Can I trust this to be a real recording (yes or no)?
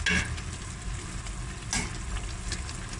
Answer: yes